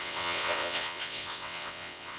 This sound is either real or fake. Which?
fake